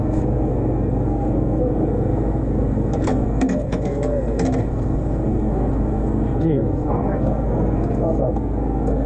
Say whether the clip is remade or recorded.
remade